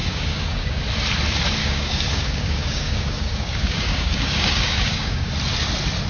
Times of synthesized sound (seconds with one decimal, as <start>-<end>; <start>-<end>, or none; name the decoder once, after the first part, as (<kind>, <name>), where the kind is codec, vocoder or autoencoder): 0.0-0.8 (codec, DAC); 1.6-5.3